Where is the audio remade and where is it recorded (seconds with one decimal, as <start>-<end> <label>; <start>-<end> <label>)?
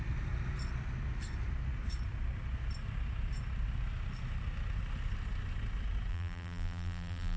0.0-6.1 recorded; 6.1-7.4 remade